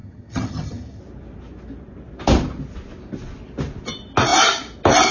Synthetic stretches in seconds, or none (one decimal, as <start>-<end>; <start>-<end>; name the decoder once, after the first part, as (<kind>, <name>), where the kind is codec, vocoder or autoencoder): 0.0-1.0 (vocoder, HiFi-GAN)